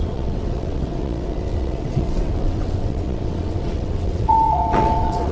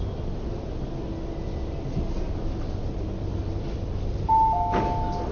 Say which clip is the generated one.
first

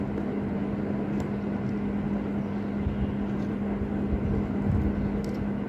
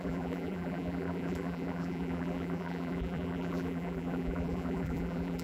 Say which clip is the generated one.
second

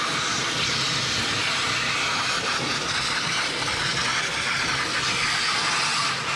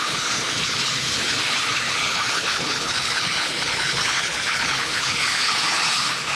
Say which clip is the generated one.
second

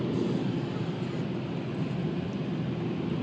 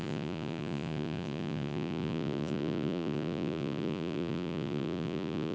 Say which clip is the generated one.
second